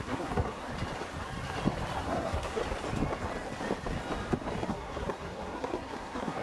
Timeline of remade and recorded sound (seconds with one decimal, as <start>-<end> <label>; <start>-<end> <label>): 0.0-0.7 remade; 0.7-2.0 recorded; 2.0-2.6 remade; 2.6-4.7 recorded; 4.7-6.4 remade